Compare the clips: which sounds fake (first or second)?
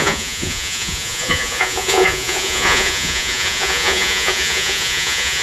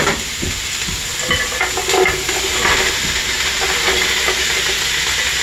first